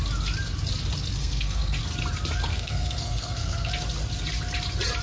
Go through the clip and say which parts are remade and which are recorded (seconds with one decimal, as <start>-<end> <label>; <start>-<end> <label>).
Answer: 0.0-1.2 recorded; 1.2-1.8 remade; 1.8-2.5 recorded; 2.5-3.7 remade; 3.7-5.0 recorded